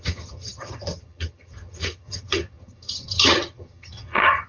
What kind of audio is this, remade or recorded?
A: remade